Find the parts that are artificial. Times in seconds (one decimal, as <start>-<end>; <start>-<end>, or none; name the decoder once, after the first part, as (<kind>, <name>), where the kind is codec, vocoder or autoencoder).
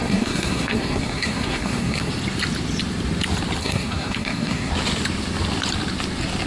0.0-2.1 (codec, SNAC); 3.6-4.7